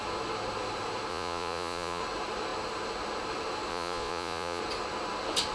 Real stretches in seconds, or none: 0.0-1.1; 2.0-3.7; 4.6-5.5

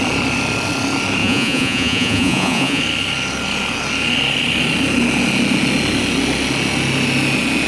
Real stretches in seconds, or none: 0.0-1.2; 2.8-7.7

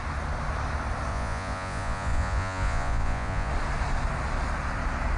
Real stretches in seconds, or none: 0.0-1.1; 3.5-5.2

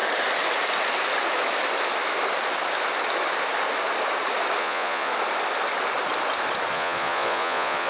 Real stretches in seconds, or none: 0.0-4.6; 5.1-6.7

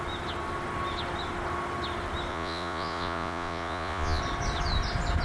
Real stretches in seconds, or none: 0.0-2.3; 4.2-5.2

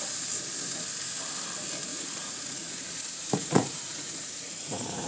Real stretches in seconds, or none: 0.0-1.9